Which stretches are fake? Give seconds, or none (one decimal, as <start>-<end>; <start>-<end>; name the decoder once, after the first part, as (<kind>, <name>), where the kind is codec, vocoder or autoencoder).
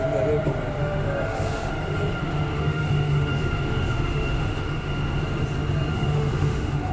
0.8-1.7 (autoencoder, DAC-VAE); 2.2-5.2; 5.9-6.9